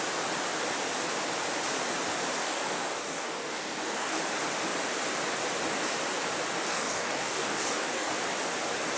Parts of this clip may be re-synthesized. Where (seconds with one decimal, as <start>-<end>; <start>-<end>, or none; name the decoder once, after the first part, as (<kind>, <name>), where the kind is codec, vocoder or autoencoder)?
2.4-4.2 (codec, DAC); 6.7-8.1